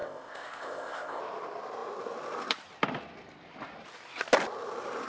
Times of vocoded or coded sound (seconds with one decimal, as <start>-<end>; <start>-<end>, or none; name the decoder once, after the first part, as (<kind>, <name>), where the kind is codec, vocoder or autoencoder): 0.0-1.2 (codec, ZipCodec)